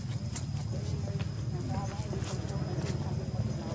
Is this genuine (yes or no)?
yes